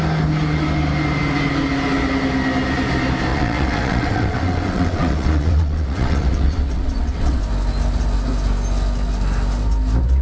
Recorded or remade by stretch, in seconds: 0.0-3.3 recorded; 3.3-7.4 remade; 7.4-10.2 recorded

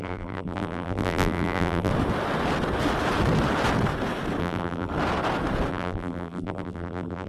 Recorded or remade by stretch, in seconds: 0.0-1.9 remade; 1.9-4.4 recorded; 4.4-4.9 remade; 4.9-5.7 recorded; 5.7-7.3 remade

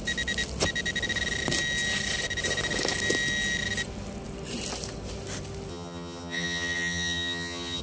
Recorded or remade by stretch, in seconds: 0.0-5.7 recorded; 5.7-7.8 remade

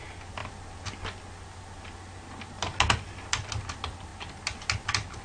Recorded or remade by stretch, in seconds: 0.0-5.2 recorded